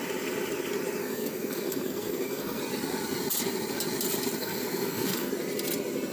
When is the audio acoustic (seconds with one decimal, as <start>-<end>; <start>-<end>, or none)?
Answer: 0.0-1.0; 2.6-4.4; 5.3-6.1